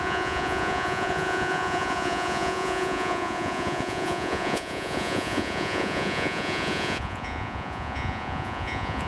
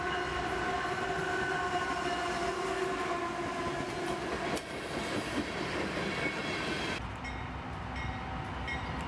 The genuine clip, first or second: second